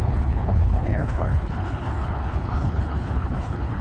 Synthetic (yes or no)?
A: yes